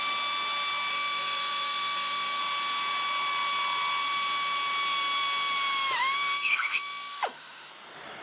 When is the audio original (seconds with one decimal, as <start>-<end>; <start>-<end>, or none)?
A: 0.0-0.9; 2.4-6.0; 7.7-8.2